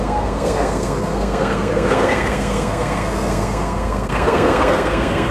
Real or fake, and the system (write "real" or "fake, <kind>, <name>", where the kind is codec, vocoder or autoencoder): fake, codec, SNAC